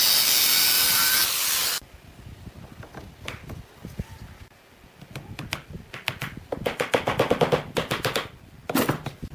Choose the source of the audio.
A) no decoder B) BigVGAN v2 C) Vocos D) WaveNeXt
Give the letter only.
A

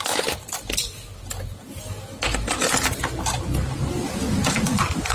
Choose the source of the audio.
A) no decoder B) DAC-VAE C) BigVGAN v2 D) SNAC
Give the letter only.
A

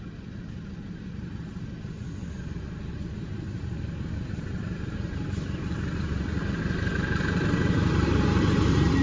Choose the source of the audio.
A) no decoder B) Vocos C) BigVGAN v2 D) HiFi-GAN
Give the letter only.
C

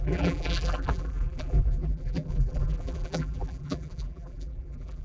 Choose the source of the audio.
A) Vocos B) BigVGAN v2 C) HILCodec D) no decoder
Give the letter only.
B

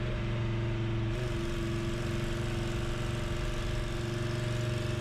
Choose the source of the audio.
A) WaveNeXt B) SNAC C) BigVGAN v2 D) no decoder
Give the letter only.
D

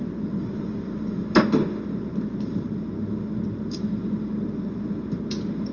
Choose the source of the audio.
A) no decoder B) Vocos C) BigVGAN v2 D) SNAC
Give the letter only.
A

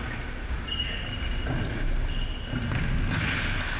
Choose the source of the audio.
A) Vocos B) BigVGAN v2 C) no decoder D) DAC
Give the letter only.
C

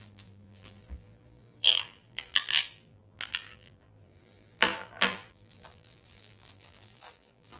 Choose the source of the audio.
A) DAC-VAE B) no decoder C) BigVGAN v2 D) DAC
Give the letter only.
C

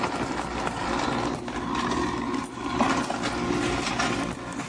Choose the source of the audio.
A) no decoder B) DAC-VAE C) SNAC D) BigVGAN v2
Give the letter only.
A